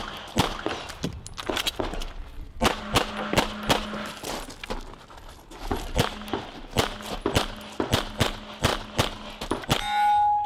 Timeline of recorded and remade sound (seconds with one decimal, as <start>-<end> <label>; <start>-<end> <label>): 0.0-10.5 recorded